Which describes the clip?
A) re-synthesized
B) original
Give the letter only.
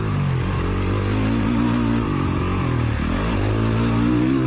B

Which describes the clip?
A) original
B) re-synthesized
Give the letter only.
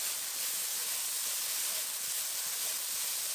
A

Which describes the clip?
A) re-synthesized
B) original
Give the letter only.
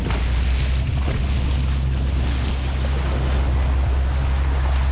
B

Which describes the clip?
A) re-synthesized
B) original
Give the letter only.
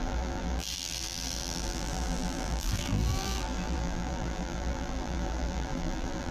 A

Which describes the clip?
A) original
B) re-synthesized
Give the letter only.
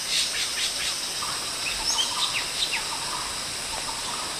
A